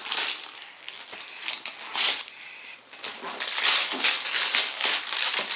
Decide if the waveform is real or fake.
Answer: real